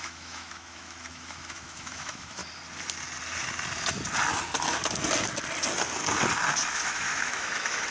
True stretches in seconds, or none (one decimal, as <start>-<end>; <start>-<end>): 2.4-6.7